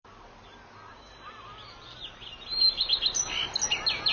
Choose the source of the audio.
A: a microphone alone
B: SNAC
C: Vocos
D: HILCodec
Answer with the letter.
A